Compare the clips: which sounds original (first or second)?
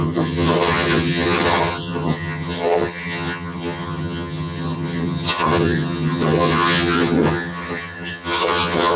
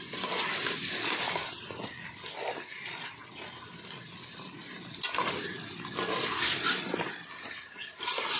second